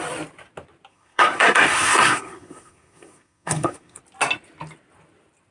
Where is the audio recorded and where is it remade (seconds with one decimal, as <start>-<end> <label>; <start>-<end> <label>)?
0.0-0.9 recorded; 0.9-4.0 remade; 4.0-5.5 recorded